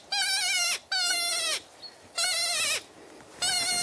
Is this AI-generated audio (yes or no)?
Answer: no